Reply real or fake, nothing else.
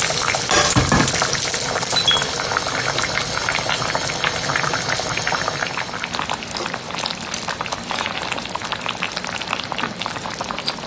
real